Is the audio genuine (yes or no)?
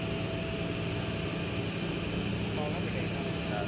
yes